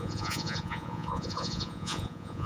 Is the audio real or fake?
fake